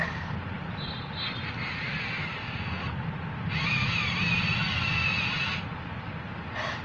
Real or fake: real